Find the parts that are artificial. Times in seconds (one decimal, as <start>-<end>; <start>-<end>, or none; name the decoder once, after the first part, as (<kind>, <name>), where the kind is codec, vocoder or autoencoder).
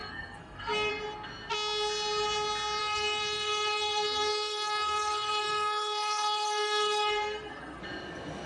0.0-0.9 (codec, SNAC); 2.8-7.8